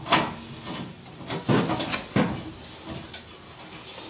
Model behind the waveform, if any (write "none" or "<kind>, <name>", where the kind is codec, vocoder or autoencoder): none